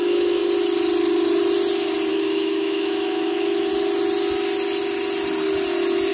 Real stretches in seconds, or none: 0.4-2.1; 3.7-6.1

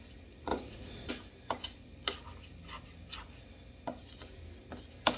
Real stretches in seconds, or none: 0.0-0.5; 1.1-5.2

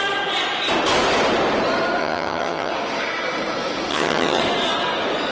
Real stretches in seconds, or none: 0.0-2.0; 2.7-3.9; 4.4-5.3